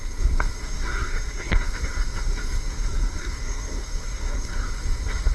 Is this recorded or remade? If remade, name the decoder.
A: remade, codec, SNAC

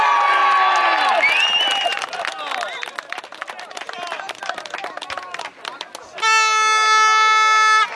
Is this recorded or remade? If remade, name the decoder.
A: recorded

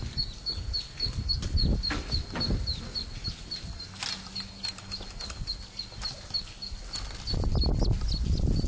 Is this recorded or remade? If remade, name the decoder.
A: recorded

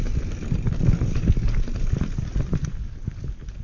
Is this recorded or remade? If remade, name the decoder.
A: recorded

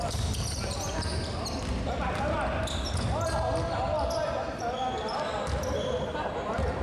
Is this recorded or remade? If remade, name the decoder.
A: recorded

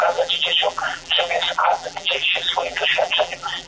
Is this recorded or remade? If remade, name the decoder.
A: remade, vocoder, BigVGAN v2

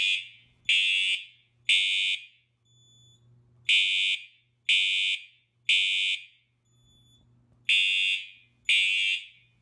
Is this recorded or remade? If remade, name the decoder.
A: recorded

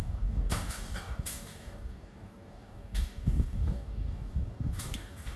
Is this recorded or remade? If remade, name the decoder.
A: remade, codec, DAC